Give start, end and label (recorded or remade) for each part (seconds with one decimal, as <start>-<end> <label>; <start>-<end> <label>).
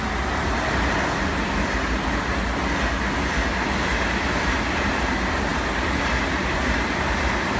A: 0.0-5.5 recorded; 5.5-7.6 remade